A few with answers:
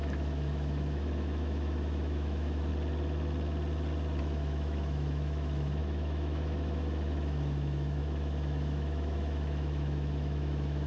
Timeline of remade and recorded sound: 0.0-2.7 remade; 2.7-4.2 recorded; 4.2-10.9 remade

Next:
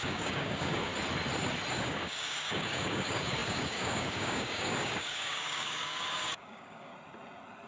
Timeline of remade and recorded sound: 0.0-0.9 remade; 0.9-1.7 recorded; 1.7-6.9 remade; 6.9-7.7 recorded

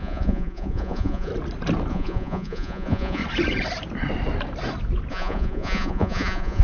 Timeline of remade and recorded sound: 0.0-1.3 remade; 1.3-1.9 recorded; 1.9-3.2 remade; 3.2-5.1 recorded; 5.1-6.6 remade

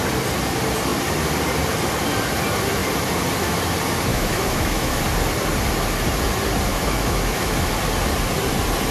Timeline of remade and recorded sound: 0.0-4.1 recorded; 4.1-5.0 remade; 5.0-6.7 recorded; 6.7-7.7 remade; 7.7-8.9 recorded

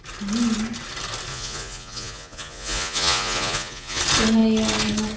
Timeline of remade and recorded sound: 0.0-1.3 recorded; 1.3-4.0 remade; 4.0-5.2 recorded

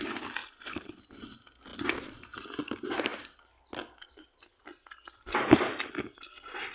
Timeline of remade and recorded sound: 0.0-0.4 recorded; 0.4-1.0 remade; 1.0-6.7 recorded

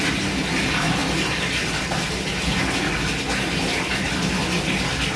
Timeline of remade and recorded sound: 0.0-5.2 recorded